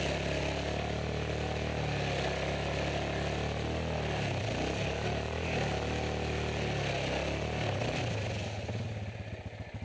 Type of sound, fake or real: real